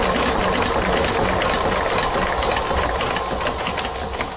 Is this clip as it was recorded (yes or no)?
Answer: yes